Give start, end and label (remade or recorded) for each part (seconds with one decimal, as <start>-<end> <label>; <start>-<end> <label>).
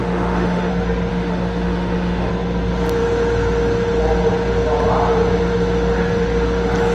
0.0-0.7 remade; 0.7-1.1 recorded; 1.1-2.3 remade; 2.3-6.9 recorded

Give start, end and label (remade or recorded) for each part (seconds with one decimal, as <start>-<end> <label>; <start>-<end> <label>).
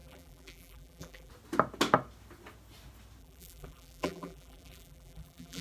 0.0-1.3 remade; 1.3-3.2 recorded; 3.2-5.6 remade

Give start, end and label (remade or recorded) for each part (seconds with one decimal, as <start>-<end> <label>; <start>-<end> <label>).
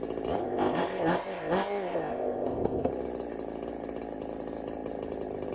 0.0-0.4 recorded; 0.4-2.9 remade; 2.9-5.5 recorded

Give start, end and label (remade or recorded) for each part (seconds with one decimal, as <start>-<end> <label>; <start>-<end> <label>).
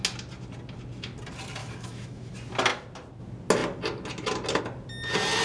0.0-1.6 recorded; 1.6-2.3 remade; 2.3-5.4 recorded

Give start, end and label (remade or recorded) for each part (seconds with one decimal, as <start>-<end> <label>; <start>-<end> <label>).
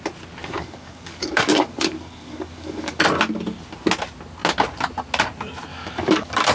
0.0-0.4 recorded; 0.4-3.0 remade; 3.0-5.7 recorded; 5.7-6.5 remade